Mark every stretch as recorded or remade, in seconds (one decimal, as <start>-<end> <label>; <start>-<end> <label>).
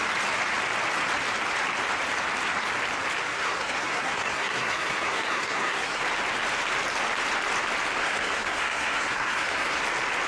0.0-3.3 recorded; 3.3-6.0 remade; 6.0-8.0 recorded; 8.0-9.8 remade; 9.8-10.3 recorded